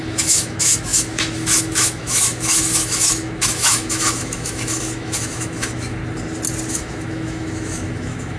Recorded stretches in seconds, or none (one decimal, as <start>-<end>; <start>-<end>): 6.0-6.7

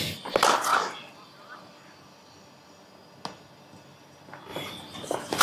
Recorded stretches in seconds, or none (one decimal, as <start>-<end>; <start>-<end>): 0.0-5.4

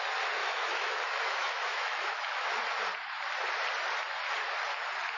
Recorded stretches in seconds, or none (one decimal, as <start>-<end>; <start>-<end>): 0.0-0.4; 2.6-5.2

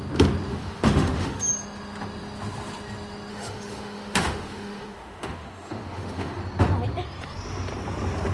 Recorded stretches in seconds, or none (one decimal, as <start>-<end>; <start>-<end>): 0.0-0.5; 1.4-3.3; 6.4-8.3

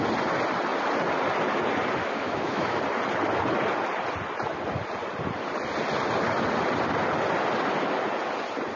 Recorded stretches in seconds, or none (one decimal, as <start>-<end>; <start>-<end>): 0.0-2.0; 2.8-8.8